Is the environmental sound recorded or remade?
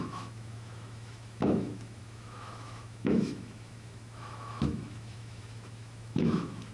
remade